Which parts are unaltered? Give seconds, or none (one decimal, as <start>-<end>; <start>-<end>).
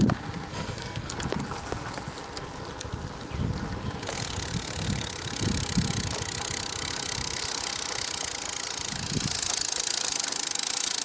0.0-0.5; 1.1-11.0